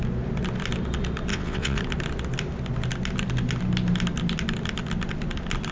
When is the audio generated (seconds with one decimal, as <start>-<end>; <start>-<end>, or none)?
1.3-1.8